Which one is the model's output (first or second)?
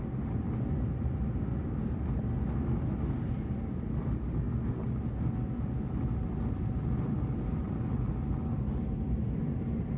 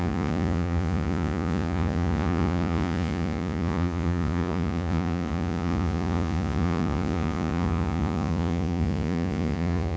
second